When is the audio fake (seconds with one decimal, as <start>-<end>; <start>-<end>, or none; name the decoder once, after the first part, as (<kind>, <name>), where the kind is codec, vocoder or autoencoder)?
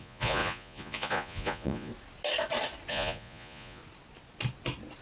0.0-1.9 (vocoder, Vocos); 2.9-3.8